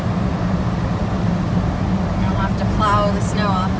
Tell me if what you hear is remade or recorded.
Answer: recorded